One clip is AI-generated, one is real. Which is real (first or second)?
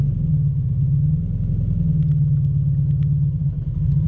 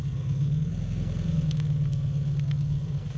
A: first